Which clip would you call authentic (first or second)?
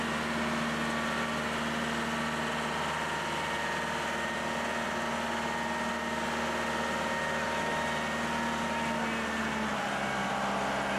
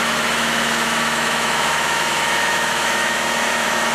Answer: first